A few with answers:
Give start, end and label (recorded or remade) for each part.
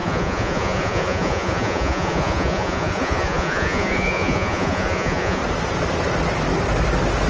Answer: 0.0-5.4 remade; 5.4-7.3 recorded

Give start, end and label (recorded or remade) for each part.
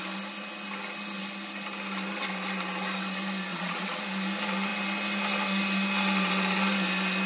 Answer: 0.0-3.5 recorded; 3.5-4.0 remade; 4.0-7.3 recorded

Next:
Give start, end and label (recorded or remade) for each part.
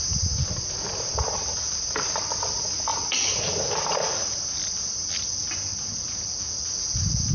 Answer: 0.0-7.3 recorded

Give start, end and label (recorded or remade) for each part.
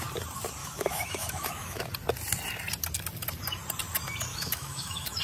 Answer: 0.0-0.6 recorded; 0.6-1.8 remade; 1.8-4.3 recorded; 4.3-5.2 remade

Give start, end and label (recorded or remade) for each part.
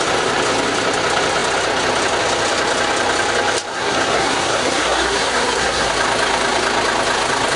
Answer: 0.0-3.7 recorded; 3.7-5.9 remade; 5.9-7.6 recorded